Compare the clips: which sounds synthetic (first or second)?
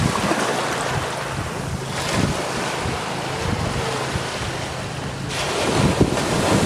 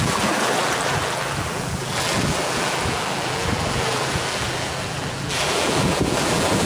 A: second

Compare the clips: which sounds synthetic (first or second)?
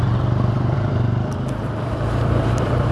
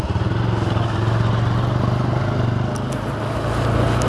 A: first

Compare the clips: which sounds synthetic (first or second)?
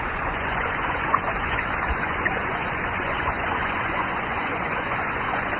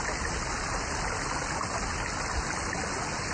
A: first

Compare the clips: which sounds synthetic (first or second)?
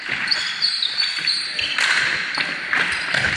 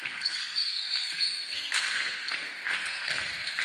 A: second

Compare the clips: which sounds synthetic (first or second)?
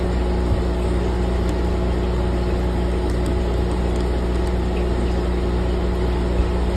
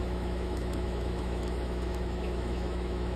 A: second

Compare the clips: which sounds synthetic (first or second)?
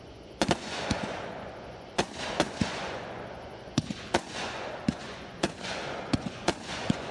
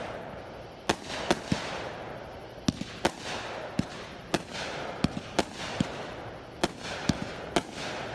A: first